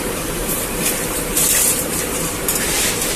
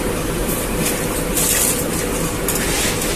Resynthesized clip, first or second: first